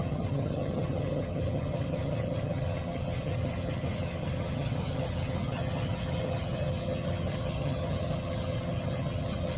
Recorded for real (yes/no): no